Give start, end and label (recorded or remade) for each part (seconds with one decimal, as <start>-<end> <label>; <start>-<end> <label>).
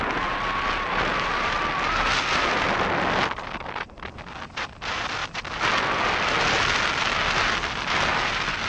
0.0-8.7 recorded